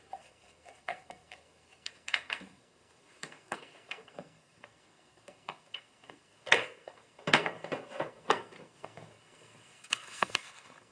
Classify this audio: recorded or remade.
remade